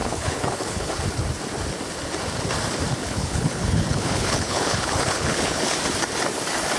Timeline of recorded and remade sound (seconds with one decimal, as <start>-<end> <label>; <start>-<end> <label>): 0.0-0.9 remade; 0.9-3.0 recorded; 3.0-5.7 remade; 5.7-6.8 recorded